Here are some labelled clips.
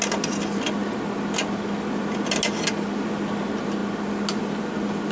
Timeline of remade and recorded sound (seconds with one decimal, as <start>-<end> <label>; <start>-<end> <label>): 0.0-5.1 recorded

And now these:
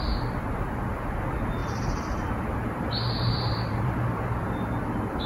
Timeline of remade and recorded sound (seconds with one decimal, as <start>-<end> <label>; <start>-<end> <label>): 0.0-1.6 recorded; 1.6-4.2 remade; 4.2-5.3 recorded

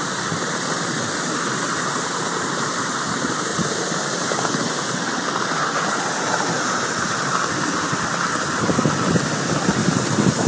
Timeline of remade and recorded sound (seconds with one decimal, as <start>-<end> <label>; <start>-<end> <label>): 0.0-10.5 recorded

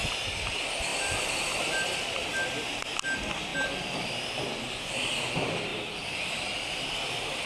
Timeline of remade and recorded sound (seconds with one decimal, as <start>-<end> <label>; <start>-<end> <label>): 0.0-7.5 recorded

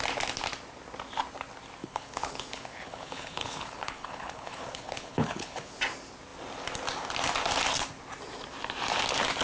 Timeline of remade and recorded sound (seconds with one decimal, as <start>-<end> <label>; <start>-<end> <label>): 0.0-1.8 recorded; 1.8-5.8 remade; 5.8-9.4 recorded

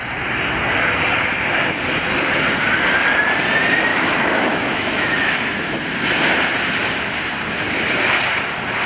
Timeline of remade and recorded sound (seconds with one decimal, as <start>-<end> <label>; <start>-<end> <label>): 0.0-3.9 recorded; 3.9-5.4 remade; 5.4-8.9 recorded